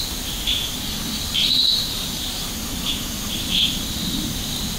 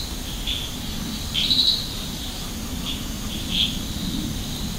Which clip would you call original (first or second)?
second